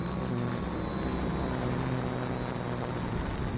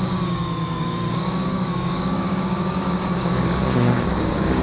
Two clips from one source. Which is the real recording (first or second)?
first